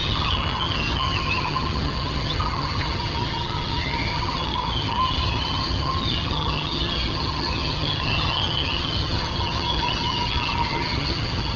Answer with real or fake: fake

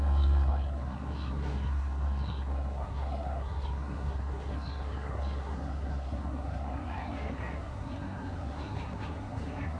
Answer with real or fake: fake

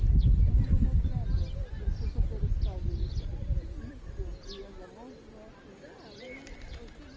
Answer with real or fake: real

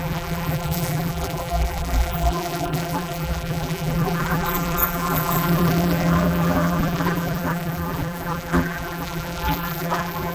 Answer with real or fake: fake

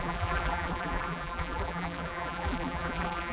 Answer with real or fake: fake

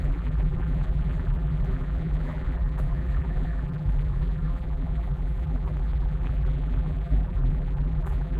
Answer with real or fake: fake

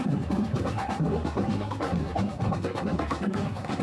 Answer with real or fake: fake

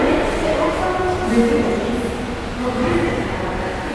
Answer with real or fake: real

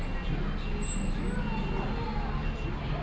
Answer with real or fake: real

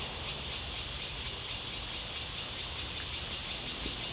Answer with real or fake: real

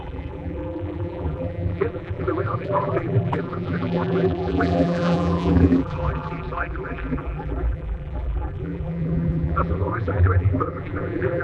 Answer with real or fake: fake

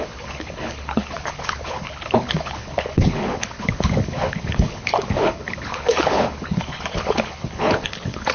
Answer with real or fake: fake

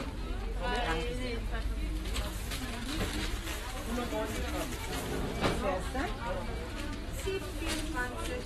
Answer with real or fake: real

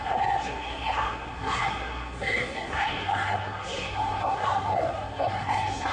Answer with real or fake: fake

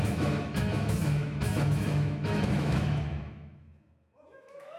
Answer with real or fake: fake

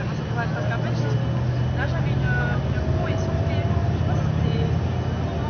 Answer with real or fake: real